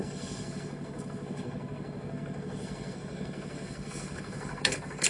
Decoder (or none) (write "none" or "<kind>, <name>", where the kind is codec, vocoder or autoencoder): codec, SNAC